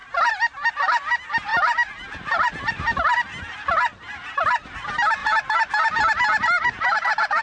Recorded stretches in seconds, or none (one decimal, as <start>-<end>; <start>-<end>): 0.7-1.5; 2.7-5.2